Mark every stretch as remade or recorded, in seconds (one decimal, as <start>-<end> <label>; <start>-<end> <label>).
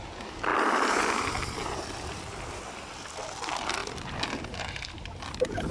0.0-3.8 remade; 3.8-4.6 recorded; 4.6-5.7 remade